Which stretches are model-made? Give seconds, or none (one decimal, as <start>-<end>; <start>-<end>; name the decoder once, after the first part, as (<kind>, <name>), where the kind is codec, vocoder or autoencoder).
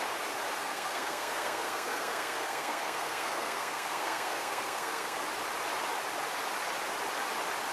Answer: 0.6-5.2 (codec, SNAC)